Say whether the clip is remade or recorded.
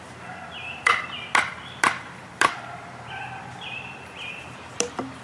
remade